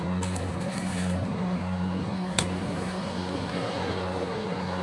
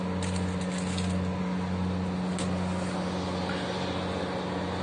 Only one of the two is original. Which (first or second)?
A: second